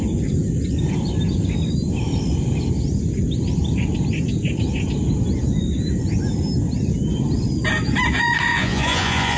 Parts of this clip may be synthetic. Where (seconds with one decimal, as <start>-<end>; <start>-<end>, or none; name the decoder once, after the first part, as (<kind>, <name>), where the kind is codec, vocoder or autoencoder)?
8.5-9.4 (vocoder, Vocos)